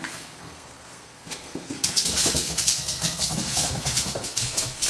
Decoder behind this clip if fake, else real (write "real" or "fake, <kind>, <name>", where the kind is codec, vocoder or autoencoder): fake, codec, SNAC